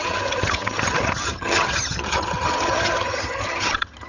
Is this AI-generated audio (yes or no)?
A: yes